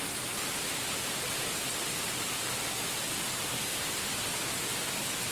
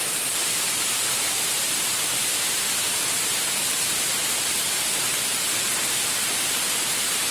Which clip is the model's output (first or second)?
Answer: second